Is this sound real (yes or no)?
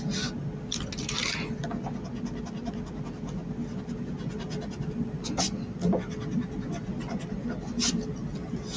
yes